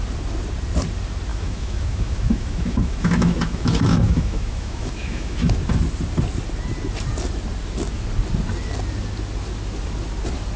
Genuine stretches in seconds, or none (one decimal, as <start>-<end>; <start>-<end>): 0.0-1.3; 5.5-10.6